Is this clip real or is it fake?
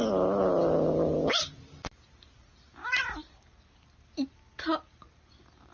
real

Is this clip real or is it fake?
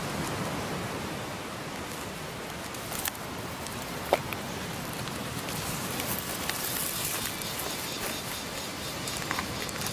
real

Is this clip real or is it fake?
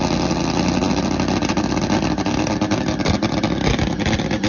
real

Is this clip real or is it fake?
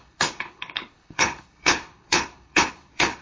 fake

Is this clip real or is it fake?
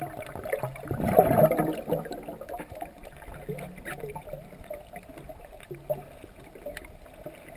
real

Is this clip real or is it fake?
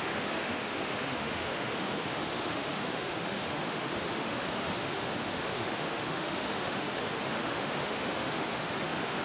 fake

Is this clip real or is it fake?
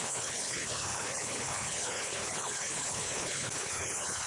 fake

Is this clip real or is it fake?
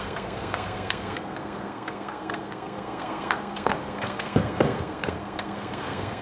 fake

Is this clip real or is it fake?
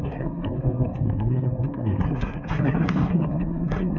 fake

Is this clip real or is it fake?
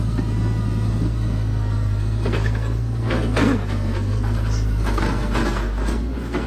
fake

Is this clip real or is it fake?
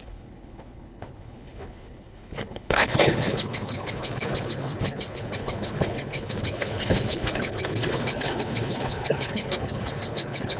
fake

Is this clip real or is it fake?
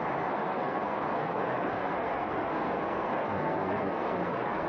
fake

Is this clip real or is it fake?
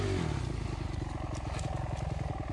real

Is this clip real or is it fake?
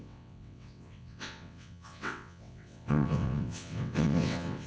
fake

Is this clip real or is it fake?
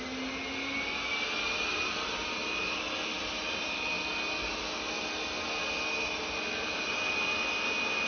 real